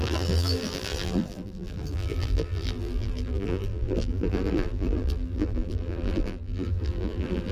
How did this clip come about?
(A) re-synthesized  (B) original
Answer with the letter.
A